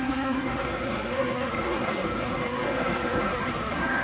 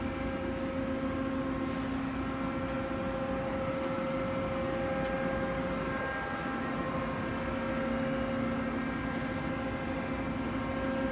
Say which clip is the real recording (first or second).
second